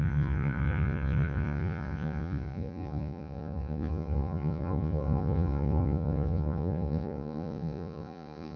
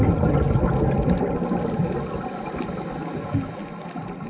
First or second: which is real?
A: second